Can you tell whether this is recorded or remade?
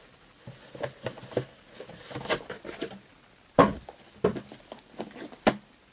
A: recorded